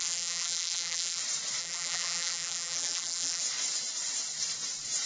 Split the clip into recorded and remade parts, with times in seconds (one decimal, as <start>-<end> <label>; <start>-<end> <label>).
0.0-1.2 remade; 1.2-1.6 recorded; 1.6-3.4 remade; 3.4-5.1 recorded